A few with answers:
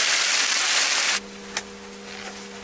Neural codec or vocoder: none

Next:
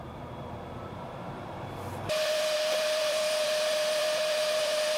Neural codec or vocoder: vocoder, BigVGAN v2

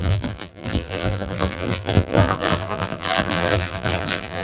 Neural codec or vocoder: vocoder, BigVGAN v2